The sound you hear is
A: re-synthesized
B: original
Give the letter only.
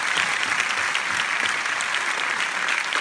B